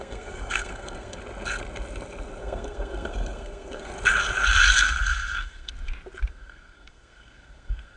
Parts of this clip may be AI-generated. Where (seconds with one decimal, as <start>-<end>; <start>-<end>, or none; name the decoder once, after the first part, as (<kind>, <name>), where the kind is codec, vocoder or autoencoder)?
0.0-1.2 (codec, SNAC); 2.4-3.9; 4.7-5.7; 6.3-8.0

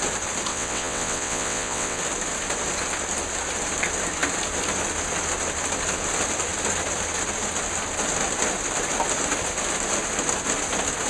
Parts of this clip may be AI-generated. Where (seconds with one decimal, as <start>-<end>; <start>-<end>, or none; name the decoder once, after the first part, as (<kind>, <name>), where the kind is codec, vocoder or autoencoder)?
0.5-2.0 (vocoder, WaveNeXt)

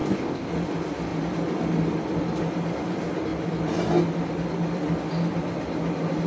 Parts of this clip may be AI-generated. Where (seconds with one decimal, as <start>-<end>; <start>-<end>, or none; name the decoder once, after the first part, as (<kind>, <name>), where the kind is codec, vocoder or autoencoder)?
0.0-0.5 (codec, ZipCodec)

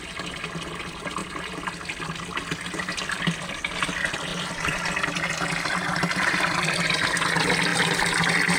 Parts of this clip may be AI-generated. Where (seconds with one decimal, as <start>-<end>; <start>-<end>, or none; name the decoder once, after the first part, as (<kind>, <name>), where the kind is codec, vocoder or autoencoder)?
4.3-4.9 (vocoder, BigVGAN v2); 7.7-8.2

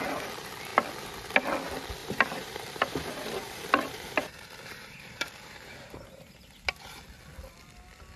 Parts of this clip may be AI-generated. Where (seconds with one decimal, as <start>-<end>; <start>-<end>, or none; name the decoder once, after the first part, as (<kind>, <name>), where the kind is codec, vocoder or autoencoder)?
2.0-6.7 (vocoder, BigVGAN v2)

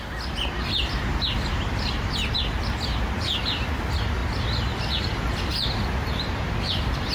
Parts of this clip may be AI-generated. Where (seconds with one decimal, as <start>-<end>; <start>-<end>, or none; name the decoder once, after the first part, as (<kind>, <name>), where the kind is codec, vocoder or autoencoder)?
5.5-6.4 (vocoder, BigVGAN v2)

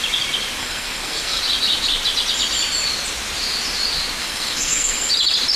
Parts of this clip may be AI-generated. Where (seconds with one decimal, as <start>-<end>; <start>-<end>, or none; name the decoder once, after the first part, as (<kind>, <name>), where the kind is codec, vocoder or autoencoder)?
0.6-1.4 (codec, SNAC); 4.2-5.1

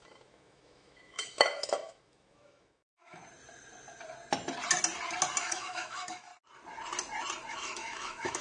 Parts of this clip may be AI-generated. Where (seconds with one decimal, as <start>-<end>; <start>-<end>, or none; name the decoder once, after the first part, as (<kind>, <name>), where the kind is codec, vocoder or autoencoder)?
0.0-3.2 (autoencoder, DAC-VAE); 5.4-6.3; 7.5-8.4